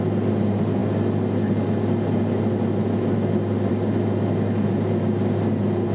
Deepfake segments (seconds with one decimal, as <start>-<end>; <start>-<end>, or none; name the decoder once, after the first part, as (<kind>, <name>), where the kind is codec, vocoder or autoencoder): none